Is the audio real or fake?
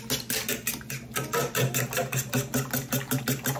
real